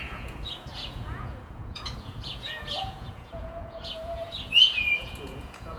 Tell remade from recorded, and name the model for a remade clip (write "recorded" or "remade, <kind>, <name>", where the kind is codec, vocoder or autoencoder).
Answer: remade, vocoder, Vocos